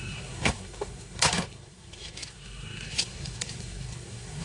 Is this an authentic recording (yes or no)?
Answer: no